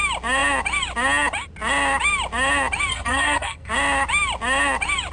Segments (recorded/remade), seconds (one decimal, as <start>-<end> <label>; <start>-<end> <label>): 0.0-2.9 recorded; 2.9-3.7 remade; 3.7-5.1 recorded